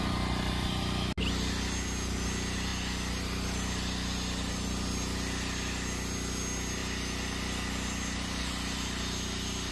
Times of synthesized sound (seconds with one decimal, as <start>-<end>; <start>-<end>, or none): none